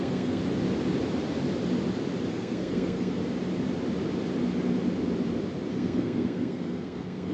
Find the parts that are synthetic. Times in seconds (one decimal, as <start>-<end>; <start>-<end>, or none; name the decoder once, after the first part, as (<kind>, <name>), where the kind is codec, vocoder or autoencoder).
0.0-0.4 (codec, SNAC); 2.3-3.2; 5.7-7.3